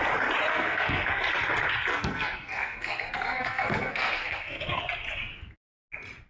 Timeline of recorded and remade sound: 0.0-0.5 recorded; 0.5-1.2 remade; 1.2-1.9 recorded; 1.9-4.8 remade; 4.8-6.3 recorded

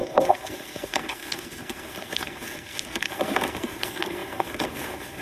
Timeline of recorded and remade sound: 0.0-5.2 remade

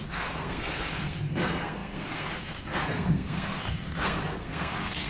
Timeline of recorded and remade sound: 0.0-5.1 remade

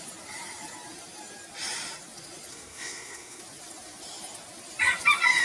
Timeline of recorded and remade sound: 0.0-2.5 recorded; 2.5-3.4 remade; 3.4-5.4 recorded

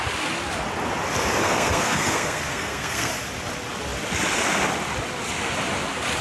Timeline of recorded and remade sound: 0.0-1.4 recorded; 1.4-3.1 remade; 3.1-6.2 recorded